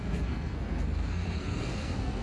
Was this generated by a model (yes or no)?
yes